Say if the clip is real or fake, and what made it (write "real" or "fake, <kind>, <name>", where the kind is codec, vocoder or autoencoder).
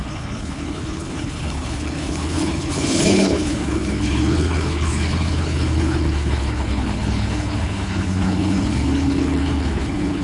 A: fake, codec, HILCodec